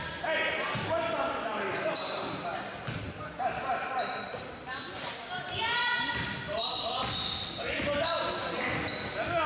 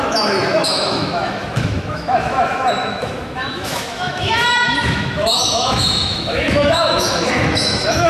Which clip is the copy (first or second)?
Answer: second